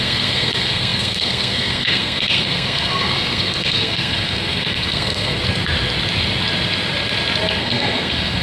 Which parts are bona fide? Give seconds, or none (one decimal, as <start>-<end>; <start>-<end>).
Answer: 5.4-7.6